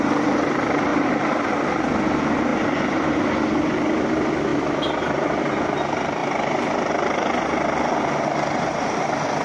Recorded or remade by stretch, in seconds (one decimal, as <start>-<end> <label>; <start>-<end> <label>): 0.0-4.5 recorded; 4.5-5.0 remade; 5.0-6.2 recorded; 6.2-6.9 remade; 6.9-9.4 recorded